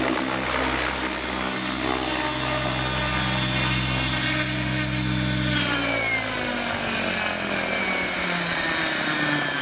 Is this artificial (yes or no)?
no